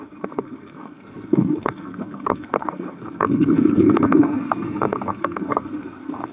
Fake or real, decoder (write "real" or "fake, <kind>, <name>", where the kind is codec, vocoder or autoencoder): fake, codec, SNAC